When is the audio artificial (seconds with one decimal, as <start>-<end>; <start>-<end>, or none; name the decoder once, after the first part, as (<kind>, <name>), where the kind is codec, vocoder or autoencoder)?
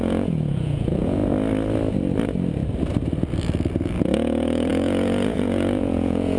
0.0-1.2 (vocoder, Vocos); 4.0-6.4